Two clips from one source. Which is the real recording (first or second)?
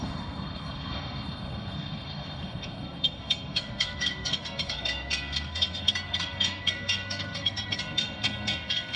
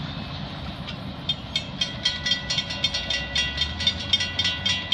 second